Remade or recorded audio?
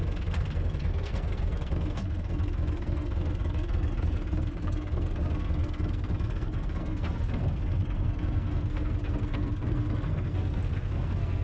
remade